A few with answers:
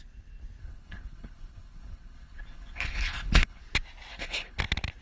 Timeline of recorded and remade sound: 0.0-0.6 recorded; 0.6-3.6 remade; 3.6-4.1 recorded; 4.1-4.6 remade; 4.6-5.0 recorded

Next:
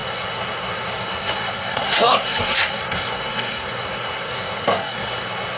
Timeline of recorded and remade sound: 0.0-5.6 remade

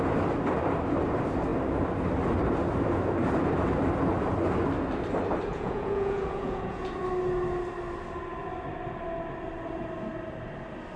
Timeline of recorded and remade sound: 0.0-5.5 recorded; 5.5-6.9 remade; 6.9-11.0 recorded

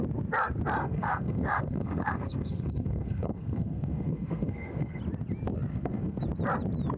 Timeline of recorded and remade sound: 0.0-0.8 recorded; 0.8-5.0 remade; 5.0-5.7 recorded; 5.7-6.2 remade; 6.2-7.0 recorded

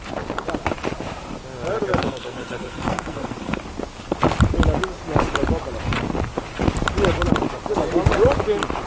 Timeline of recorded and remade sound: 0.0-2.0 recorded; 2.0-3.6 remade; 3.6-8.9 recorded